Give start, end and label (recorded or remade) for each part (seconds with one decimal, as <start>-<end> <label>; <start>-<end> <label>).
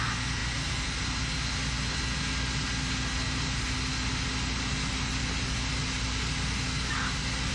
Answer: 0.0-7.5 recorded